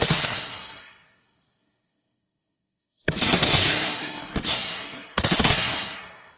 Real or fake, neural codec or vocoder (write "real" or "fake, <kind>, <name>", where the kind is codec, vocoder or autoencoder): fake, codec, SNAC